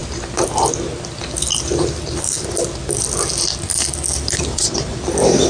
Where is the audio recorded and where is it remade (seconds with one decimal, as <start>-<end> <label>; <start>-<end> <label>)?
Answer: 0.0-4.5 recorded; 4.5-5.0 remade; 5.0-5.5 recorded